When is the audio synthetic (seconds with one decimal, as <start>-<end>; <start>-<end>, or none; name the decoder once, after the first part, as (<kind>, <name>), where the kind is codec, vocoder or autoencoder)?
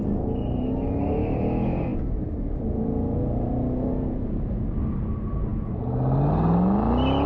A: none